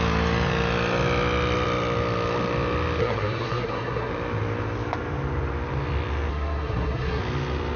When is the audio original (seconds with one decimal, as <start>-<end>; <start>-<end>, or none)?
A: 0.0-3.0; 4.1-6.3; 7.2-7.8